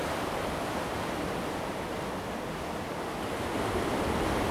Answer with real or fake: real